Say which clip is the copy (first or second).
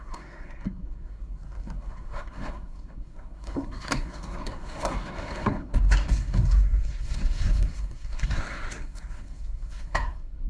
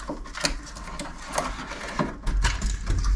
first